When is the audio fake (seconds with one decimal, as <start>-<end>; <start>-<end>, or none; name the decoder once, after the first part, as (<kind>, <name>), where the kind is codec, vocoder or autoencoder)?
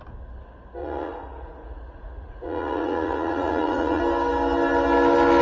0.8-4.0 (vocoder, Vocos)